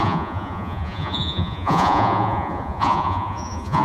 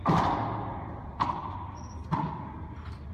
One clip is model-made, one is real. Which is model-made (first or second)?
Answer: first